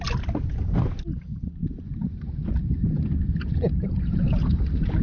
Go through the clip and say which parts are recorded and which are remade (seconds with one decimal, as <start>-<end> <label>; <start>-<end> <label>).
0.0-1.6 recorded; 1.6-4.6 remade; 4.6-5.0 recorded